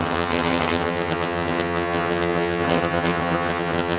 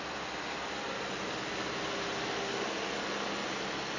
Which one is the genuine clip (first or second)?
second